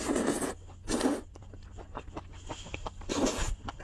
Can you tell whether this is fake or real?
real